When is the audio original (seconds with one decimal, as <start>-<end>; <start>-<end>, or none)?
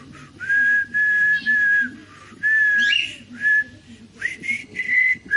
0.0-4.6